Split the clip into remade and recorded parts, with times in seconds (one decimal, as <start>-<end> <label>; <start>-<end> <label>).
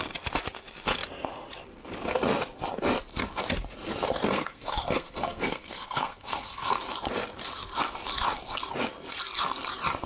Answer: 0.0-4.3 recorded; 4.3-6.8 remade; 6.8-10.1 recorded